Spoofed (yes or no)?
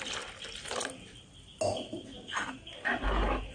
no